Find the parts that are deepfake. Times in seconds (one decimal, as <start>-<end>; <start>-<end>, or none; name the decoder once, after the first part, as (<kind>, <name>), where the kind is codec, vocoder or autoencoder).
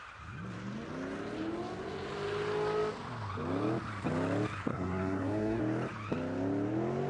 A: 4.7-5.6 (codec, SNAC)